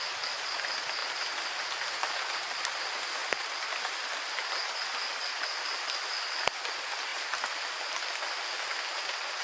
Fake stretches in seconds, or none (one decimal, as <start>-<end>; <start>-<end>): none